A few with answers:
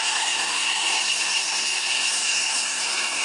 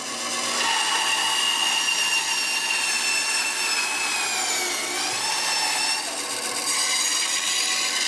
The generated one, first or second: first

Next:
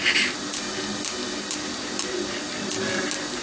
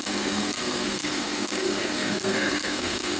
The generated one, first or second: second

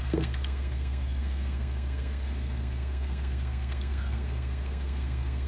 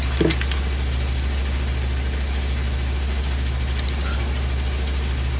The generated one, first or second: first